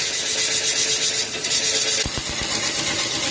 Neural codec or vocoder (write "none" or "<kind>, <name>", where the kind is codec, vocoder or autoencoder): none